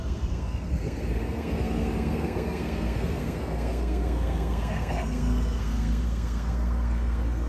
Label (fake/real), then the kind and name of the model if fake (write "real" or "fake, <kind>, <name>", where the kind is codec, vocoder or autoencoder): fake, codec, SNAC